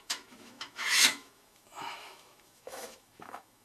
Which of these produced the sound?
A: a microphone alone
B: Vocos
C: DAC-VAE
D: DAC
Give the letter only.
C